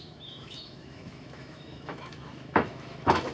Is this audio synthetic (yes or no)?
yes